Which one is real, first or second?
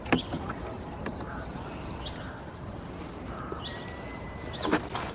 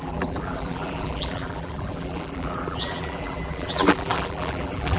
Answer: first